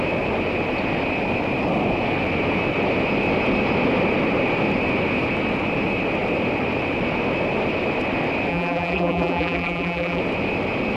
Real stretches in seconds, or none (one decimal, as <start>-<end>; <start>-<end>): 0.0-8.5; 10.2-11.0